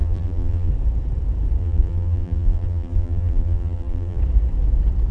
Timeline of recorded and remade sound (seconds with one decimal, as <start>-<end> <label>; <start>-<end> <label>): 0.0-0.7 remade; 0.7-1.6 recorded; 1.6-4.2 remade; 4.2-5.1 recorded